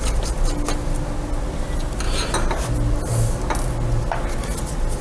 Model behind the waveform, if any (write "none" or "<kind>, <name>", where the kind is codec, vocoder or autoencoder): none